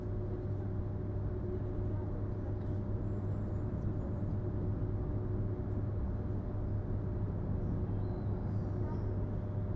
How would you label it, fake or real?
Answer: real